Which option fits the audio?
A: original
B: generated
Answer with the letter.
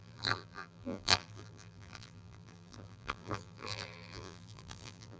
B